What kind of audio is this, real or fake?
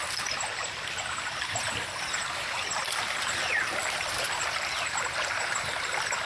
fake